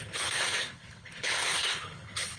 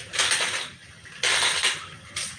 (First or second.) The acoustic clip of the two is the second